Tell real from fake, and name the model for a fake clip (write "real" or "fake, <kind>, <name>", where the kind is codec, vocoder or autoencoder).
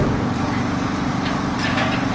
real